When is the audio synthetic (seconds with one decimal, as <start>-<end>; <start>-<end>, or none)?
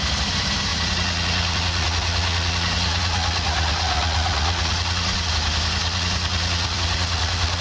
0.7-5.3; 5.8-7.6